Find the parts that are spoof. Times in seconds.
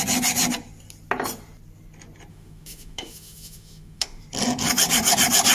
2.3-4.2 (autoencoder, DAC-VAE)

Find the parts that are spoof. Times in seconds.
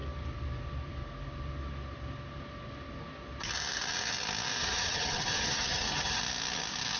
4.6-6.2 (vocoder, HiFi-GAN)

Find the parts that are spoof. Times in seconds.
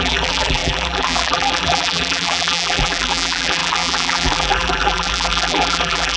0.0-6.2 (vocoder, BigVGAN v2)